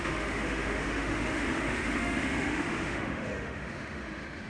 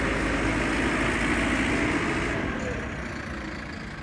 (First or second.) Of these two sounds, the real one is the second